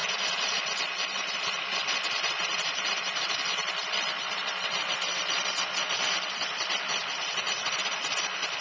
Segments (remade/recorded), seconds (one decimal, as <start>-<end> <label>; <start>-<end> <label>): 0.0-8.6 recorded

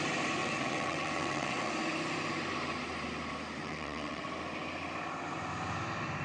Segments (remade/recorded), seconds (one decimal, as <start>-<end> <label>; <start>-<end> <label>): 0.0-0.4 recorded; 0.4-1.7 remade; 1.7-3.6 recorded; 3.6-4.2 remade; 4.2-6.2 recorded

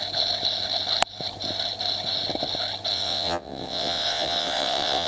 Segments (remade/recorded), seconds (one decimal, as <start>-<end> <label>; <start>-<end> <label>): 0.0-2.9 recorded; 2.9-5.1 remade

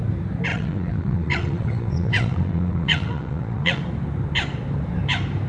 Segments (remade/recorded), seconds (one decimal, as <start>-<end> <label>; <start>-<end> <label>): 0.0-0.5 recorded; 0.5-3.8 remade; 3.8-5.5 recorded

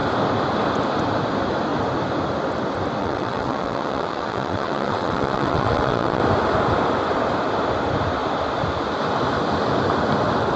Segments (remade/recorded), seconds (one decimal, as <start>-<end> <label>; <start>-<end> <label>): 0.0-3.0 recorded; 3.0-6.2 remade; 6.2-10.6 recorded

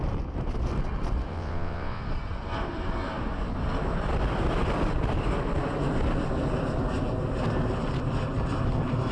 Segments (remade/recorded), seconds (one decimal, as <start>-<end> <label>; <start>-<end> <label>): 0.0-1.3 recorded; 1.3-2.0 remade; 2.0-9.1 recorded

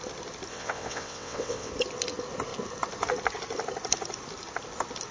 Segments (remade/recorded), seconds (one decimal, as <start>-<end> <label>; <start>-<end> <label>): 0.0-0.5 recorded; 0.5-1.7 remade; 1.7-5.1 recorded

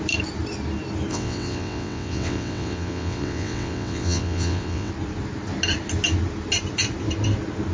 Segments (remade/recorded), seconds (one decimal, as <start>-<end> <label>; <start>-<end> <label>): 0.0-1.1 recorded; 1.1-4.9 remade; 4.9-7.7 recorded